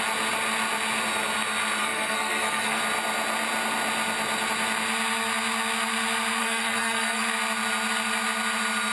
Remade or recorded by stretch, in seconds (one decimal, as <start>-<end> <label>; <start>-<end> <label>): 0.0-1.8 recorded; 1.8-2.8 remade; 2.8-6.4 recorded; 6.4-7.2 remade; 7.2-8.9 recorded